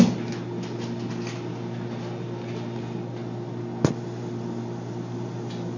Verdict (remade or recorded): recorded